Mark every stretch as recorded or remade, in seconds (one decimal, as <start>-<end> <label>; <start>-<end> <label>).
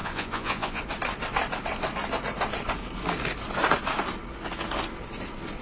0.0-0.8 remade; 0.8-5.6 recorded